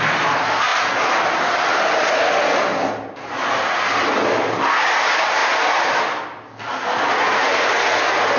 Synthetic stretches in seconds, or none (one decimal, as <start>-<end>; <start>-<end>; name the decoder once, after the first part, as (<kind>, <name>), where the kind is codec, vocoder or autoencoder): none